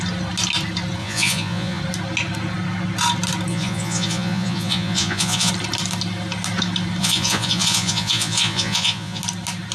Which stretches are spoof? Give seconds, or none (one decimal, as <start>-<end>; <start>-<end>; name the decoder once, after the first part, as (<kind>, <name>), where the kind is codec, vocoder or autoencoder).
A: 1.0-1.8 (vocoder, Vocos); 3.5-5.5; 7.0-9.2